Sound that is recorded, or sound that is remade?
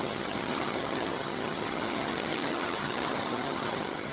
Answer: remade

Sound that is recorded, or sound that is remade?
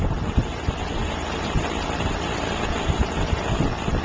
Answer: recorded